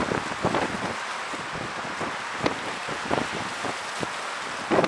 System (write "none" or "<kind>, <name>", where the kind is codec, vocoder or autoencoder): none